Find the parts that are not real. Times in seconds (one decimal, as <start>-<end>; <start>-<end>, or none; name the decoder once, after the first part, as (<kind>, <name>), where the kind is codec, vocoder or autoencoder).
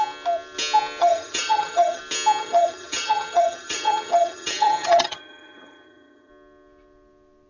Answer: 1.0-2.0 (vocoder, HiFi-GAN); 2.4-6.3